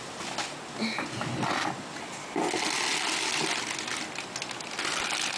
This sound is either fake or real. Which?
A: real